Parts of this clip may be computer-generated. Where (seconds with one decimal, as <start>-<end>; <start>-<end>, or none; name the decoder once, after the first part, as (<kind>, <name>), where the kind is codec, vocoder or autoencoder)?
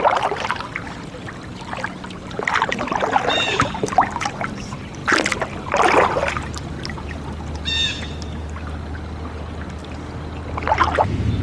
none